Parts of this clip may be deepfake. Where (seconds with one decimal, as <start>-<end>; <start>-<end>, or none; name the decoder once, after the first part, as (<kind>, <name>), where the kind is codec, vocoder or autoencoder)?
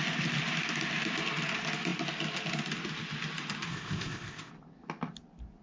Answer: 3.7-4.5 (codec, ZipCodec)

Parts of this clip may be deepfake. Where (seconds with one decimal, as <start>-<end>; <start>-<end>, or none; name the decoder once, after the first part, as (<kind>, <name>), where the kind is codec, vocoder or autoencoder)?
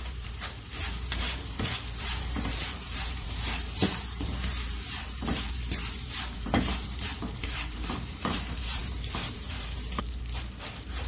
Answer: 0.0-11.1 (vocoder, BigVGAN v2)